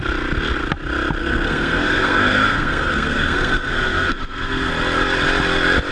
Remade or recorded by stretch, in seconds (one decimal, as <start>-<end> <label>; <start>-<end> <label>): 0.0-1.2 recorded; 1.2-4.7 remade; 4.7-5.9 recorded